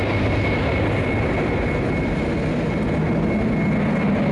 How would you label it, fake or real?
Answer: real